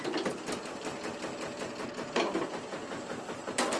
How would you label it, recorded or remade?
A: recorded